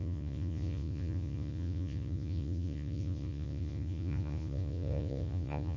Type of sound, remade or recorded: remade